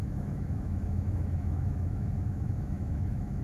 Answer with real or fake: fake